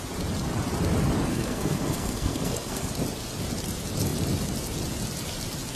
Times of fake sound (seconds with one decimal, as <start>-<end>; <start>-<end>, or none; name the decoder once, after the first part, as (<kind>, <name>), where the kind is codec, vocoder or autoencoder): 1.3-2.9 (codec, SNAC)